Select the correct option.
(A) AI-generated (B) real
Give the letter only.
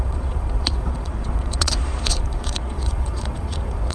A